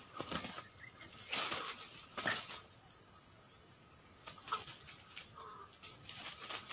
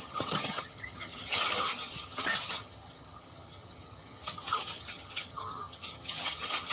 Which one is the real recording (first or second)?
first